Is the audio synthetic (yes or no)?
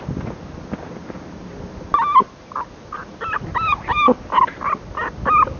no